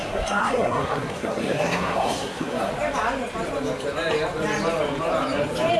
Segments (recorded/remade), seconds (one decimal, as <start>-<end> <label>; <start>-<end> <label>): 0.0-2.7 remade; 2.7-5.8 recorded